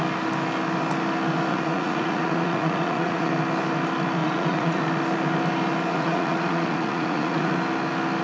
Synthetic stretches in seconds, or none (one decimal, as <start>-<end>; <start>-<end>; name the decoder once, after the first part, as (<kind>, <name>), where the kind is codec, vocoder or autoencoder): 1.5-3.3 (vocoder, Vocos); 4.2-4.8; 5.9-7.5

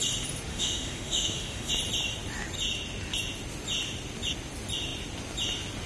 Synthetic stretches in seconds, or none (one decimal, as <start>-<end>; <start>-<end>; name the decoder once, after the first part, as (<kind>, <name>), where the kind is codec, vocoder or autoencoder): 0.5-1.7 (autoencoder, DAC-VAE)

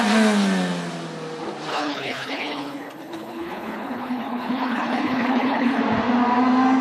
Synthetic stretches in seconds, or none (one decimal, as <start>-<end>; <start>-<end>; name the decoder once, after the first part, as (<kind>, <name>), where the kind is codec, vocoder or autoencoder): 1.7-5.8 (codec, HILCodec)

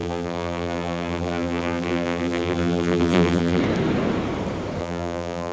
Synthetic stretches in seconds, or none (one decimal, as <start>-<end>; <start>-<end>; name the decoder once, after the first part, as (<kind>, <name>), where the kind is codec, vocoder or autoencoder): 0.0-3.6 (vocoder, BigVGAN v2); 4.8-5.5

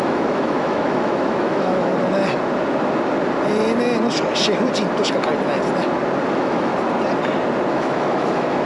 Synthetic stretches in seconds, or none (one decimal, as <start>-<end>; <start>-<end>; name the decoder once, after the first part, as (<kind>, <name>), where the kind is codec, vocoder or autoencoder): 0.0-1.9 (autoencoder, DAC-VAE); 6.3-6.7; 7.7-8.7

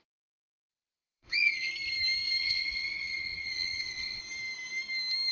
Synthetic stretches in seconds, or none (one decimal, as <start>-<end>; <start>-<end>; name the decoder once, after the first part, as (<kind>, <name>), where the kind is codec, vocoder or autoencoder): 0.7-1.7 (vocoder, WaveNeXt); 2.4-4.2

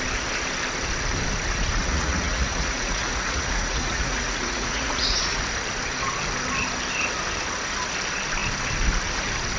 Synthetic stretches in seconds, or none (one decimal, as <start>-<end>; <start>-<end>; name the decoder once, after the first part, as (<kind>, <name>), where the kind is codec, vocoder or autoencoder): 1.8-5.4 (vocoder, Vocos)

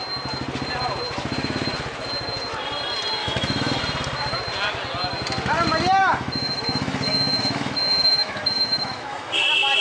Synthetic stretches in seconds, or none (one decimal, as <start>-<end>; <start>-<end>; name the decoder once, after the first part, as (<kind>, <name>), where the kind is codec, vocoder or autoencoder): 3.2-3.8 (autoencoder, DAC-VAE); 6.0-9.3